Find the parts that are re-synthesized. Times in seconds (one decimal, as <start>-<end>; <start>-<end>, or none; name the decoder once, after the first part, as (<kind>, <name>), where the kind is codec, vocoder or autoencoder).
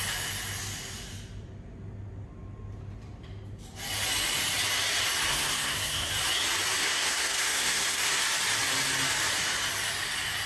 5.3-6.1 (codec, SNAC); 6.8-8.2